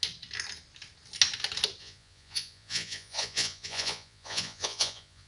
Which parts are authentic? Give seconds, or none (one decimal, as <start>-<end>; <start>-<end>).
0.0-1.8